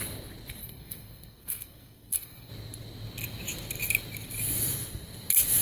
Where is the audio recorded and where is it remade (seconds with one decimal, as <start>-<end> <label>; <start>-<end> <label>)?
0.0-0.6 recorded; 0.6-2.5 remade; 2.5-5.6 recorded